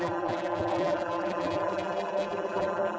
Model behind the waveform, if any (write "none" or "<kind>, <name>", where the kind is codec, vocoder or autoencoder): vocoder, BigVGAN v2